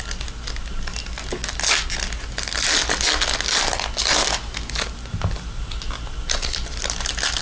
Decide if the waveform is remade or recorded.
recorded